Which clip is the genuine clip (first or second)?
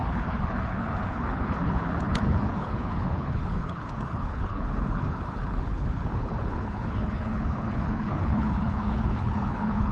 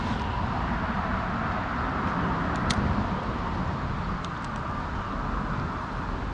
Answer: second